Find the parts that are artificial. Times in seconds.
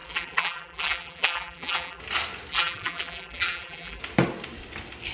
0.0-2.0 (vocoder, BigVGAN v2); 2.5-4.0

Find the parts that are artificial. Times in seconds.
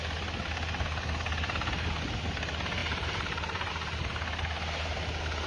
2.8-3.7 (vocoder, BigVGAN v2)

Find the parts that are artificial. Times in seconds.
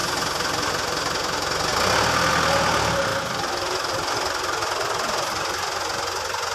none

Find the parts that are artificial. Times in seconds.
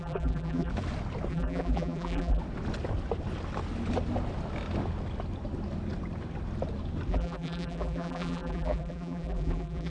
0.0-0.7 (vocoder, BigVGAN v2); 1.3-2.4; 7.1-9.9